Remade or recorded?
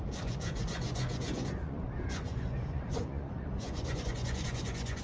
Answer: remade